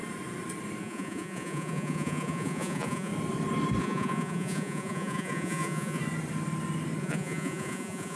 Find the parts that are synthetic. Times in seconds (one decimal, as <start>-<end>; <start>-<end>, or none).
0.8-3.1; 3.8-6.0; 7.0-8.2